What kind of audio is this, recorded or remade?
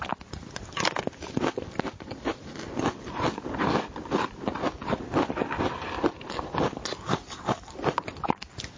recorded